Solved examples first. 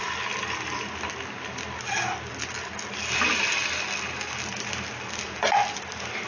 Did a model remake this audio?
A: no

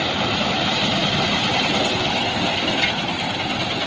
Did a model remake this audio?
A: no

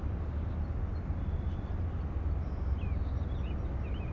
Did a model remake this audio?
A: no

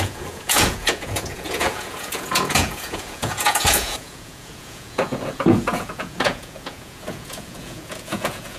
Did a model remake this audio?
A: yes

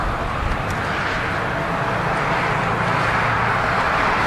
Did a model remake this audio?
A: no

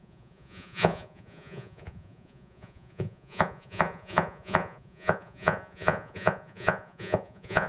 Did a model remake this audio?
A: yes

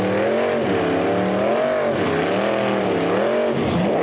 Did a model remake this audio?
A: no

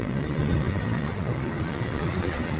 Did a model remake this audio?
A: yes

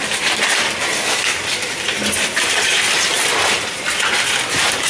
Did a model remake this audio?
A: no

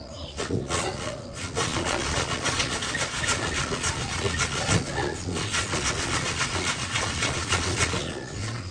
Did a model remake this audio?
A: yes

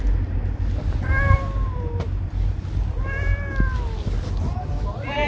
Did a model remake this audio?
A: no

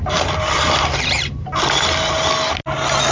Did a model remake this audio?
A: no